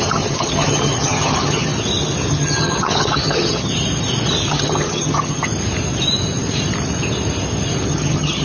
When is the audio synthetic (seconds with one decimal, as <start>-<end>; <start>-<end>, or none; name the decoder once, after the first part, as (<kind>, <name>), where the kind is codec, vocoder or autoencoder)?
0.0-1.7 (vocoder, HiFi-GAN); 2.3-3.7; 4.5-5.5; 7.9-8.4